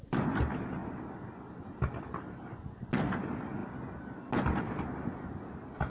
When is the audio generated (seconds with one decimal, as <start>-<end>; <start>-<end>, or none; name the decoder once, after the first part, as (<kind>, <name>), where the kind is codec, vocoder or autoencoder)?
none